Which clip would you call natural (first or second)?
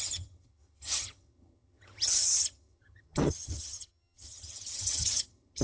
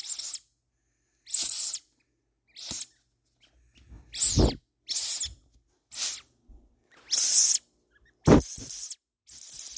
second